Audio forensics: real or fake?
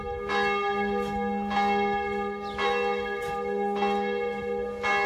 real